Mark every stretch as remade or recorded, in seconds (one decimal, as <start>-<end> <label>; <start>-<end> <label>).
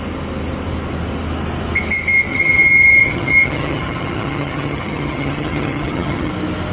0.0-2.3 recorded; 2.3-6.3 remade; 6.3-6.7 recorded